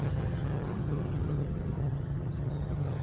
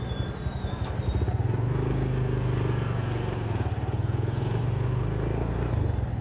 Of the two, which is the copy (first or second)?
first